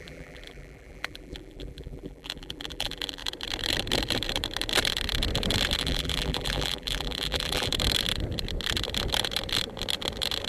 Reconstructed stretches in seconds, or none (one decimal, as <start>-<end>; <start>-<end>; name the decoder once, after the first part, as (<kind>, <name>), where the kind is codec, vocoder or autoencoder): 0.0-3.2 (vocoder, BigVGAN v2); 5.8-7.7